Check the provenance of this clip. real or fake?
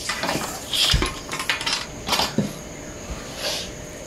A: fake